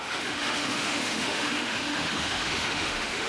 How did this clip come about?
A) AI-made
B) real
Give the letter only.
A